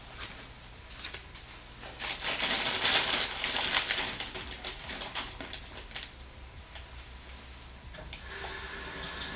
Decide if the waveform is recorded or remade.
recorded